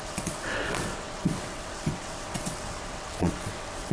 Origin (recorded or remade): remade